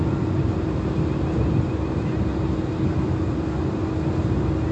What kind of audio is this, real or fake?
real